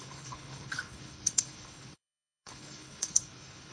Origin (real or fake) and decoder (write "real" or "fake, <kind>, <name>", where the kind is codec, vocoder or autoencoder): fake, codec, HILCodec